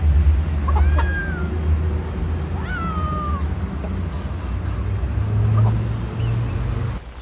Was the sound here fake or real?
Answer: real